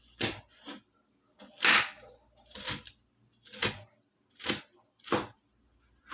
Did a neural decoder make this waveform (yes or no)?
no